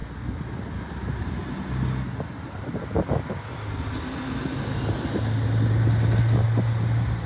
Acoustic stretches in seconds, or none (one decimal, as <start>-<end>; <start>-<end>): 0.0-7.3